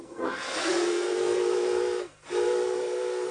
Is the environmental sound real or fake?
fake